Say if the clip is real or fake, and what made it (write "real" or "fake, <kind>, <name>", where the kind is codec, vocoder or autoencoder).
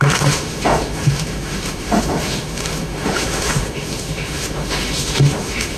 fake, autoencoder, DAC-VAE